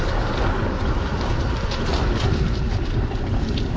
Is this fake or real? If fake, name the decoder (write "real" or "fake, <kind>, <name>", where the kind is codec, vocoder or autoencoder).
fake, vocoder, BigVGAN v2